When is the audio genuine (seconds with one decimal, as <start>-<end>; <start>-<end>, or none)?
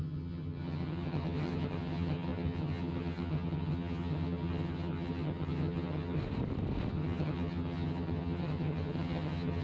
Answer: 6.2-6.9